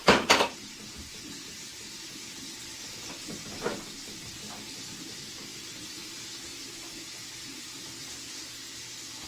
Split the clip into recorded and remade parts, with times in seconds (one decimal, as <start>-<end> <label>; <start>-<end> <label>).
0.0-9.3 recorded